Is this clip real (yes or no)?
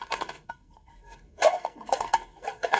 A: no